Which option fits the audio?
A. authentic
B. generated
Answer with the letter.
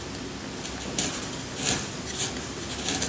A